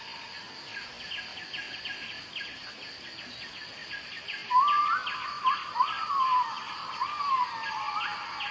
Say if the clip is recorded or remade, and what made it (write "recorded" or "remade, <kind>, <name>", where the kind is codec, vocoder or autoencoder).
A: recorded